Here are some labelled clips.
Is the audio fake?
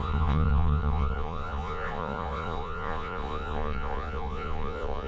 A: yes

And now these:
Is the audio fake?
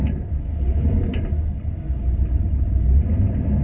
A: yes